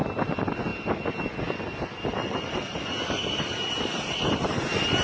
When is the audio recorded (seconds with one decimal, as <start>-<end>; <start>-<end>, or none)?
0.0-5.0